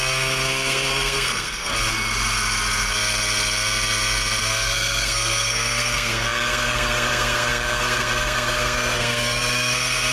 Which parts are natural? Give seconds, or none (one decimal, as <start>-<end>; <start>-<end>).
1.7-4.4